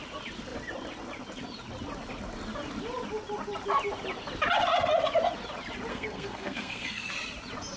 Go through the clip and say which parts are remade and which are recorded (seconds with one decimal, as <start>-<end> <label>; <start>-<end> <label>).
0.0-5.9 recorded; 5.9-7.1 remade; 7.1-7.8 recorded